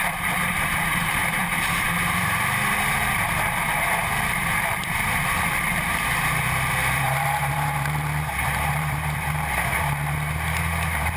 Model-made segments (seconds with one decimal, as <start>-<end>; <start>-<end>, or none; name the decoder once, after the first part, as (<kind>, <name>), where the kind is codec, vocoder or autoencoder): 0.0-11.2 (vocoder, BigVGAN v2)